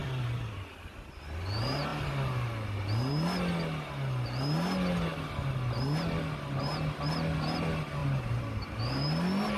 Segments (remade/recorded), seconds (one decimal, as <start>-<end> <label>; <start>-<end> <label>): 0.0-0.7 remade; 0.7-8.0 recorded; 8.0-8.8 remade; 8.8-9.6 recorded